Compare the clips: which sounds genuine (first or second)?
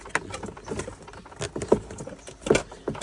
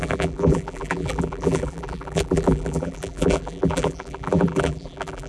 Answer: first